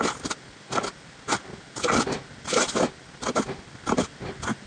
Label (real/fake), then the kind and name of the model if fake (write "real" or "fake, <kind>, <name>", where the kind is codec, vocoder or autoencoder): real